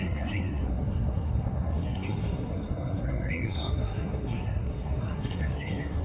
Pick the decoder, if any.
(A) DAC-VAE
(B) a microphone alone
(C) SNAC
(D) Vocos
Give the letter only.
C